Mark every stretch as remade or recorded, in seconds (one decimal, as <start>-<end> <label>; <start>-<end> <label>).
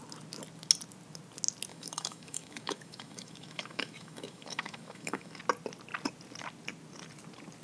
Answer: 0.0-1.7 recorded; 1.7-5.4 remade; 5.4-7.6 recorded